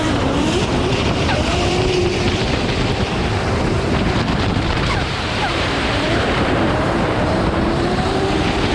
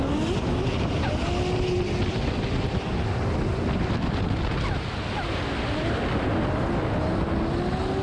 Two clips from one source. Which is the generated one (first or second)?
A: first